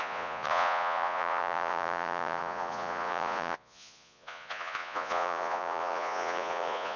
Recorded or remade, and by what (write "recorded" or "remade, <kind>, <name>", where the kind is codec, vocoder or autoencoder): remade, vocoder, Vocos